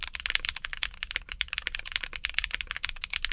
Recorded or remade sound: recorded